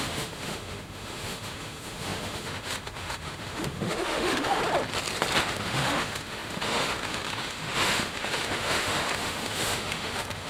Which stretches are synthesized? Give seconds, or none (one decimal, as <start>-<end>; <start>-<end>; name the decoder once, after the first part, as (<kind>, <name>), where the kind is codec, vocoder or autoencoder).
0.0-4.6 (autoencoder, DAC-VAE); 5.4-10.5